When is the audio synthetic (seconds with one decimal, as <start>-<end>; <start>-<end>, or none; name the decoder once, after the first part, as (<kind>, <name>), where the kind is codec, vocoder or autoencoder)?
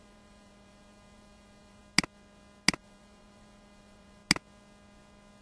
0.0-1.8 (vocoder, BigVGAN v2); 2.8-4.2